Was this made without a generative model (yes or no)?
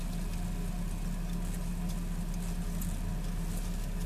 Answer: yes